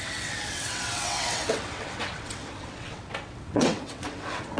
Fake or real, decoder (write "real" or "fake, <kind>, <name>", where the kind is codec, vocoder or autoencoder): fake, vocoder, WaveNeXt